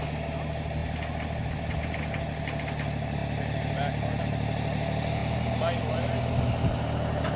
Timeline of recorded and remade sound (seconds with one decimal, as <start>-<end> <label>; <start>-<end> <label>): 0.0-7.4 recorded